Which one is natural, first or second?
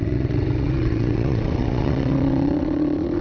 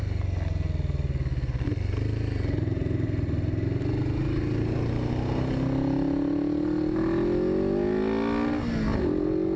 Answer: second